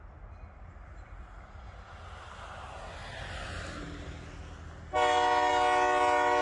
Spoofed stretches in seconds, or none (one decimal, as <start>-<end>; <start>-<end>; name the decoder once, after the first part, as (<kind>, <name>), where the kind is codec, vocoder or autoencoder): none